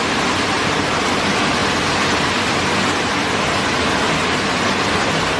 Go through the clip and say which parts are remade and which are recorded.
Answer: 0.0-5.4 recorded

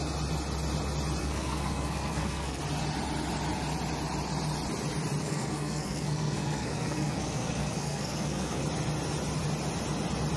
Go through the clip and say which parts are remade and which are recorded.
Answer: 0.0-1.2 recorded; 1.2-2.6 remade; 2.6-5.2 recorded; 5.2-8.6 remade; 8.6-10.4 recorded

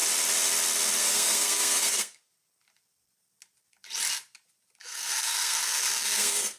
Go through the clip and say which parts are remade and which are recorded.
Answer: 0.0-1.0 recorded; 1.0-2.3 remade; 2.3-4.8 recorded; 4.8-6.6 remade

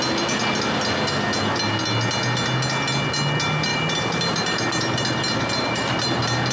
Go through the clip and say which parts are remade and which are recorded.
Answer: 0.0-3.7 recorded; 3.7-6.5 remade

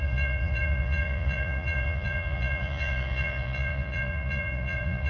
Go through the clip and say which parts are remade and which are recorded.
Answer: 0.0-5.1 remade

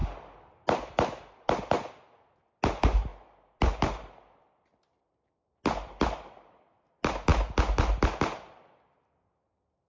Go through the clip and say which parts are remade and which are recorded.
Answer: 0.0-9.9 recorded